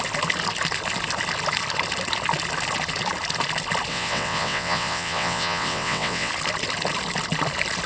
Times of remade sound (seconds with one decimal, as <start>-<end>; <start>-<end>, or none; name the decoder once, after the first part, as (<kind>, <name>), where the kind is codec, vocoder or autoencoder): 3.9-6.3 (vocoder, WaveNeXt)